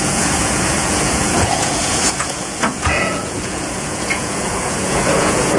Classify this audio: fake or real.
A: fake